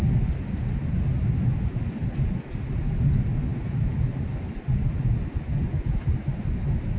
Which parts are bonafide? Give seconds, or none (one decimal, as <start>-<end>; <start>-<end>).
0.0-7.0